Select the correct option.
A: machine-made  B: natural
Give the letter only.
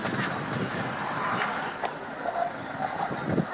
B